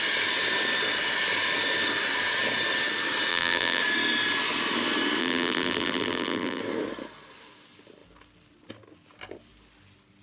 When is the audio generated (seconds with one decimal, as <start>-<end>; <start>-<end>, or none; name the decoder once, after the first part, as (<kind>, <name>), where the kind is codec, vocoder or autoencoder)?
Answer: 3.3-3.8 (vocoder, BigVGAN v2); 5.2-6.6